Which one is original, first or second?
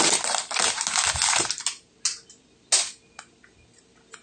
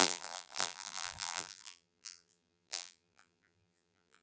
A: first